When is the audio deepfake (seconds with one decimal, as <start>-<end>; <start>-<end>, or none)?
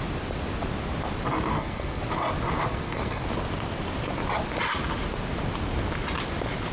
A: 1.5-2.0; 2.7-3.2